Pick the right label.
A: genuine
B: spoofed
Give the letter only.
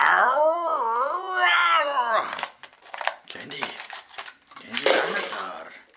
B